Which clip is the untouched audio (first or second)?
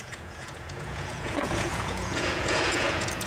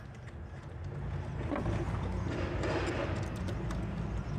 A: second